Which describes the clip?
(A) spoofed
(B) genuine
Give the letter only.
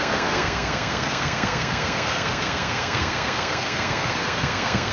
A